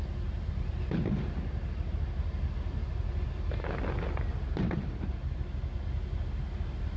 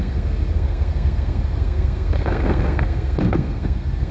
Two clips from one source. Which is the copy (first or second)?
second